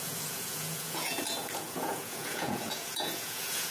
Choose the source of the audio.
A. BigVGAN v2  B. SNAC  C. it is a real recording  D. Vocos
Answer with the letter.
D